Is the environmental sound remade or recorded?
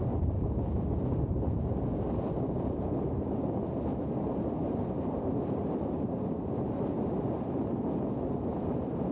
recorded